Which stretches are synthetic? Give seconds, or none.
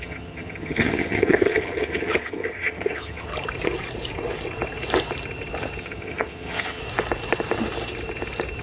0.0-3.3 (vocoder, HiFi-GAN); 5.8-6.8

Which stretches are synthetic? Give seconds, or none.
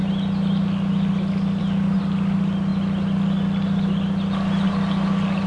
none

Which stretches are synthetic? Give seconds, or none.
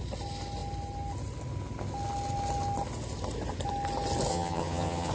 4.3-5.1 (vocoder, HiFi-GAN)